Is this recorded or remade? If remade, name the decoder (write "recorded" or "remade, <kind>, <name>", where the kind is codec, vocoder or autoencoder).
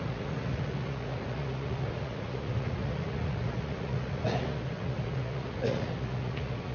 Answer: remade, vocoder, Vocos